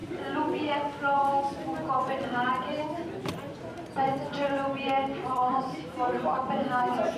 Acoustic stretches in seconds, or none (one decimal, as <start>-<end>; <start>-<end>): 3.3-5.1